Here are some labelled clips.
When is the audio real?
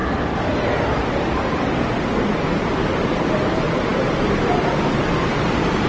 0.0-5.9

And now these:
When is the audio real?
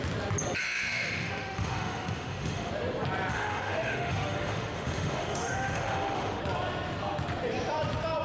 0.0-0.6; 2.7-3.3; 6.4-8.2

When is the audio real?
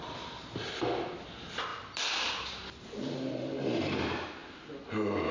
0.0-5.3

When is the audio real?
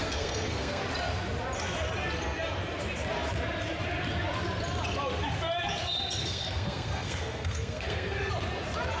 0.8-6.2; 8.3-9.0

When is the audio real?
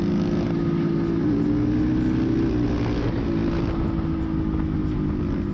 0.0-5.5